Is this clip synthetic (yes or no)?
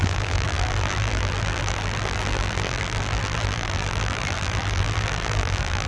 yes